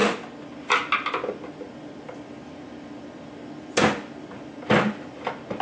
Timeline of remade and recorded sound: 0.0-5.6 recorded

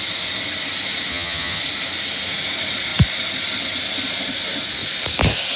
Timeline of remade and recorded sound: 0.0-1.1 recorded; 1.1-1.6 remade; 1.6-5.6 recorded

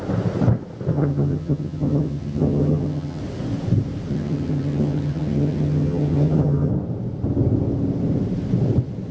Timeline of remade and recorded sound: 0.0-0.9 recorded; 0.9-3.2 remade; 3.2-4.1 recorded; 4.1-6.7 remade; 6.7-9.1 recorded